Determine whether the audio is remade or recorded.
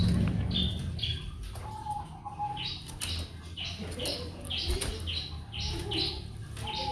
recorded